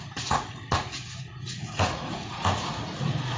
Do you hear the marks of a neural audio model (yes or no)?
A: yes